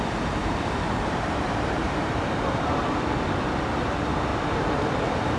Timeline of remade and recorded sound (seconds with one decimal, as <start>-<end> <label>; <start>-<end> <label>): 0.0-0.4 recorded; 0.4-2.8 remade; 2.8-4.3 recorded; 4.3-5.4 remade